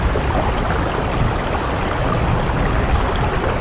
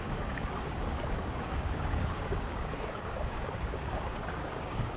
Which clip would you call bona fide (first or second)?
first